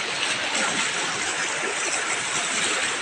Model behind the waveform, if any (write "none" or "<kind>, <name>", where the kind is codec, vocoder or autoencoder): none